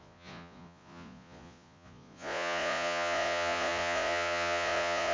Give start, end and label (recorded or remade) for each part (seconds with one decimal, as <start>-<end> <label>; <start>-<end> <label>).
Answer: 0.0-5.1 remade